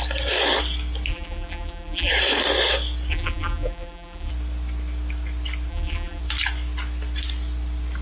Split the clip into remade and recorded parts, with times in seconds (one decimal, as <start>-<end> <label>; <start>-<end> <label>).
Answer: 0.0-1.1 recorded; 1.1-2.1 remade; 2.1-3.1 recorded; 3.1-4.3 remade; 4.3-5.7 recorded; 5.7-6.2 remade; 6.2-8.0 recorded